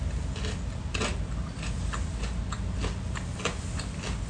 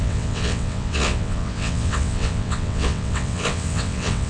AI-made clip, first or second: second